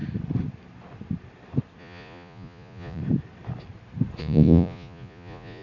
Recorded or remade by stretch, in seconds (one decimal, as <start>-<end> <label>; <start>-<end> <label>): 0.0-1.8 recorded; 1.8-3.0 remade; 3.0-4.2 recorded; 4.2-5.6 remade